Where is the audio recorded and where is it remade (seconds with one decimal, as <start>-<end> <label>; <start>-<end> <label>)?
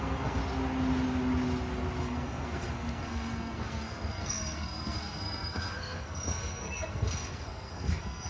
0.0-0.4 remade; 0.4-2.0 recorded; 2.0-8.3 remade